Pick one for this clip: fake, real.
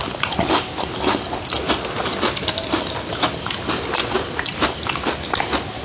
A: real